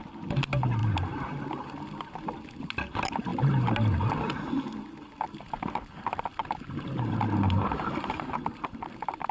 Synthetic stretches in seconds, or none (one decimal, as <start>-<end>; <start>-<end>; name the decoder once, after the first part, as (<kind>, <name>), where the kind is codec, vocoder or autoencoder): none